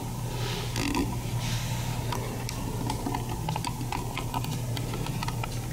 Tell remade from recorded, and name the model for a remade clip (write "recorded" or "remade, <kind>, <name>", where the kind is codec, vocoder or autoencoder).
recorded